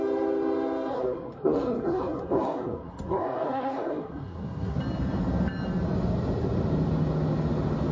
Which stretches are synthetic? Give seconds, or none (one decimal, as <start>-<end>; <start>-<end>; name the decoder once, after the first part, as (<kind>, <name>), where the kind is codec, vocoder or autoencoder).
0.9-4.8 (codec, SNAC)